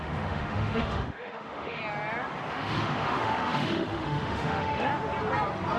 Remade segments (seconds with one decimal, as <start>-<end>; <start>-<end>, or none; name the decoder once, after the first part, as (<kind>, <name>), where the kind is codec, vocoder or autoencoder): 0.0-1.8 (autoencoder, DAC-VAE); 2.5-4.9

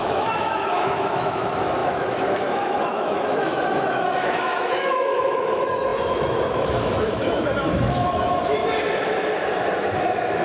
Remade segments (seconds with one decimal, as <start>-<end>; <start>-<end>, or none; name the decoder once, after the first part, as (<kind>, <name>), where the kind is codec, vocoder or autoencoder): 0.0-8.6 (autoencoder, DAC-VAE); 10.0-10.4

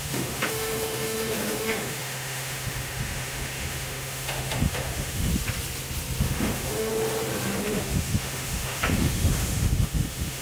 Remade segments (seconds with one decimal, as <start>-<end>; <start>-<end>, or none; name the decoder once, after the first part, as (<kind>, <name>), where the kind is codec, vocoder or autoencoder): 0.0-5.3 (autoencoder, DAC-VAE); 6.2-6.9; 7.6-10.4

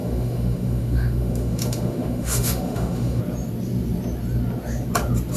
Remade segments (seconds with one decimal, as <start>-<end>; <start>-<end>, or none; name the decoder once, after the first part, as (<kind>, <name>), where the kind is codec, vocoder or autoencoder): 0.0-3.2 (autoencoder, DAC-VAE)

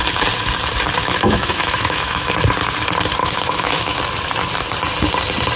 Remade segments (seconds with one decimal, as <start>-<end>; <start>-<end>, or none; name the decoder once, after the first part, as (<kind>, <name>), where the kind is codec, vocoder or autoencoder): 1.0-2.3 (autoencoder, DAC-VAE); 3.2-4.0